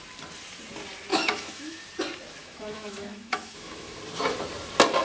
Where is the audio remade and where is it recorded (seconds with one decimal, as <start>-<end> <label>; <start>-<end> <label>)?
0.0-1.1 recorded; 1.1-1.8 remade; 1.8-2.4 recorded; 2.4-4.0 remade; 4.0-5.0 recorded